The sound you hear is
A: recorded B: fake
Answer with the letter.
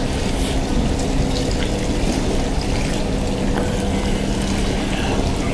A